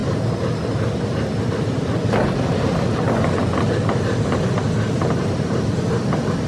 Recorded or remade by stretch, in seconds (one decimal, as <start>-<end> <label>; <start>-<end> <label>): 0.0-6.5 recorded